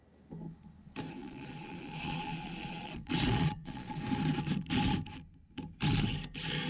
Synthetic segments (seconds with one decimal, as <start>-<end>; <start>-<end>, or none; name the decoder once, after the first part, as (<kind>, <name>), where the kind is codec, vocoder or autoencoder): 1.2-4.0 (vocoder, Vocos)